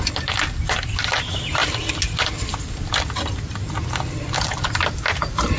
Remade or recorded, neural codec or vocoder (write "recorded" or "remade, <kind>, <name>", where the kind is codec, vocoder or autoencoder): recorded